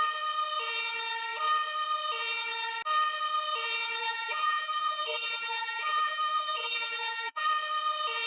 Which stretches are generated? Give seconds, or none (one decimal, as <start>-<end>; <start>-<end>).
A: 4.0-7.5